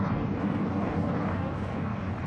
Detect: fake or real fake